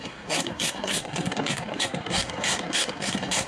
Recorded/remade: remade